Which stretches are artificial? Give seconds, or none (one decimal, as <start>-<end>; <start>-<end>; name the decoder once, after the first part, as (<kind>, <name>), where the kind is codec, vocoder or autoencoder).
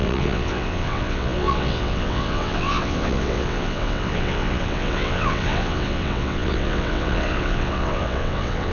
0.0-8.7 (vocoder, WaveNeXt)